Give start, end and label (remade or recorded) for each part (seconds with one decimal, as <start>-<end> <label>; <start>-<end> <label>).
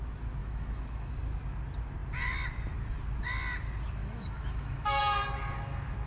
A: 0.0-0.4 recorded; 0.4-1.1 remade; 1.1-4.0 recorded; 4.0-5.0 remade; 5.0-6.1 recorded